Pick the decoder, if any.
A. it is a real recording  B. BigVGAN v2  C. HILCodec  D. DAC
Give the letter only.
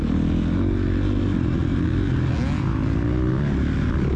A